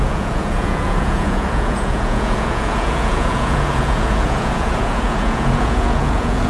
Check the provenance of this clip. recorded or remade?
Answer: remade